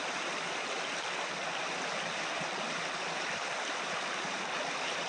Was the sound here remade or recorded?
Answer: recorded